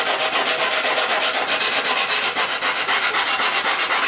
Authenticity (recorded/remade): recorded